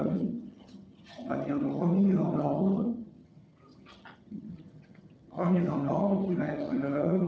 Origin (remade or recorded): remade